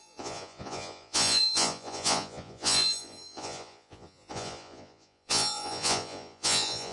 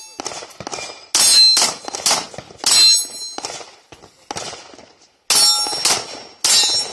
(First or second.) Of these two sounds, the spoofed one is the first